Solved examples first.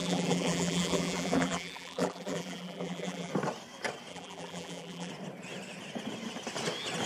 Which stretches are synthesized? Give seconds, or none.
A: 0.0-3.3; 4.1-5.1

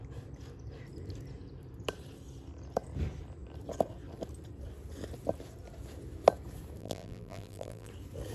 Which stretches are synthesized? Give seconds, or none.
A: 6.8-7.9

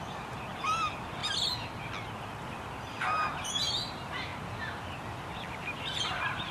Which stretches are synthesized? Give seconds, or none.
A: 0.0-1.2; 2.8-4.3; 5.4-6.5

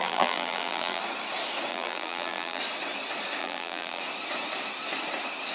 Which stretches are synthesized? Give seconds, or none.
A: 0.0-1.0; 1.7-2.6; 3.4-4.0

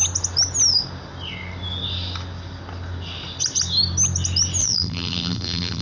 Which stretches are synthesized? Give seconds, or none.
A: 4.6-5.8

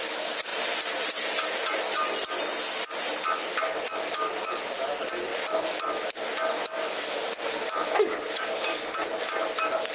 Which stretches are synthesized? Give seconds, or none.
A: 0.5-1.1; 5.3-8.0